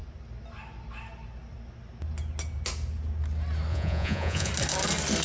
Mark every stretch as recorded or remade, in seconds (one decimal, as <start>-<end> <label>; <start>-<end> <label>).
0.0-3.7 recorded; 3.7-4.5 remade; 4.5-5.2 recorded